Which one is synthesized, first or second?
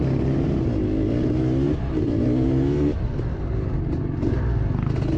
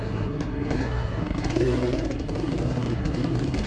second